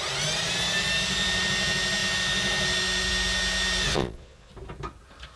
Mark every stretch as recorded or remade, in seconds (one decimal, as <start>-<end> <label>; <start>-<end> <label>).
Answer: 0.0-3.9 recorded; 3.9-4.5 remade; 4.5-5.4 recorded